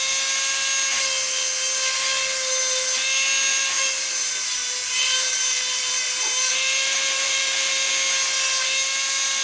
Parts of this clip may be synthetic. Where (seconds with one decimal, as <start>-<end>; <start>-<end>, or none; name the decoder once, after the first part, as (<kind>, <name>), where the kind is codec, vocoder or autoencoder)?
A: 3.5-4.1 (vocoder, BigVGAN v2); 4.6-7.9